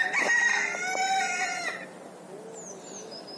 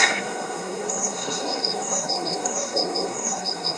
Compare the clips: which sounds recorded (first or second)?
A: first